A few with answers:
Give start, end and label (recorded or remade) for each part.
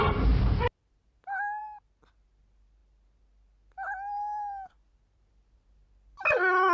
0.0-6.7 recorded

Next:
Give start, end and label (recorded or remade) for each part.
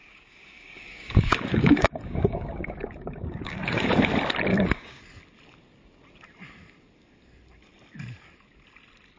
0.0-4.1 remade; 4.1-4.5 recorded; 4.5-5.0 remade; 5.0-9.2 recorded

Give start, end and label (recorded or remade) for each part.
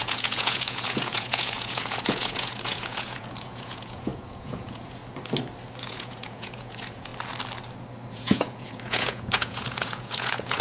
0.0-5.0 remade; 5.0-5.8 recorded; 5.8-7.1 remade; 7.1-8.1 recorded; 8.1-10.6 remade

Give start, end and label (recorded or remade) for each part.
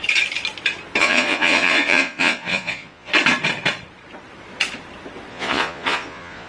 0.0-1.0 recorded; 1.0-3.1 remade; 3.1-5.3 recorded; 5.3-6.5 remade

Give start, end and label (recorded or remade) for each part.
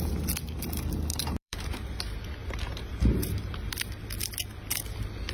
0.0-1.1 recorded; 1.1-2.0 remade; 2.0-2.4 recorded; 2.4-3.7 remade; 3.7-5.3 recorded